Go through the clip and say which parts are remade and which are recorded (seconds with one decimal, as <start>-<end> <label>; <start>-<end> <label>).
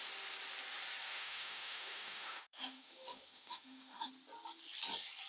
0.0-1.1 recorded; 1.1-4.1 remade; 4.1-5.3 recorded